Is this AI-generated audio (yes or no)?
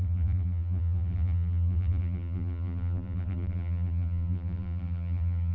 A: yes